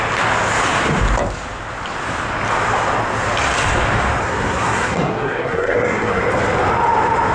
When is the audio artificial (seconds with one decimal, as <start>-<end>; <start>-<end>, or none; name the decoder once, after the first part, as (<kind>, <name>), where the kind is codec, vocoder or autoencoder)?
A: 4.2-6.2 (codec, SNAC)